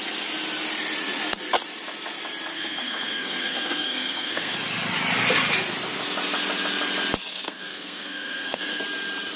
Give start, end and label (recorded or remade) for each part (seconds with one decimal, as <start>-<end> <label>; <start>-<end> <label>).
0.0-2.5 recorded; 2.5-4.5 remade; 4.5-7.3 recorded; 7.3-8.8 remade; 8.8-9.4 recorded